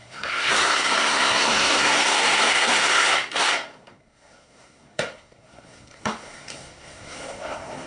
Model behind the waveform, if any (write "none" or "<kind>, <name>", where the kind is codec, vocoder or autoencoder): codec, SNAC